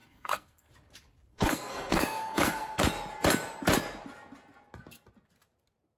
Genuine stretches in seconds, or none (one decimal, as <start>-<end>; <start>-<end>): 0.7-1.3; 2.8-6.0